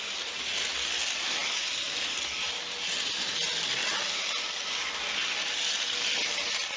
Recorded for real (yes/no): yes